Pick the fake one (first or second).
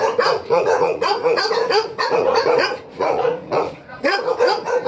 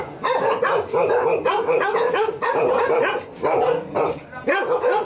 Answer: first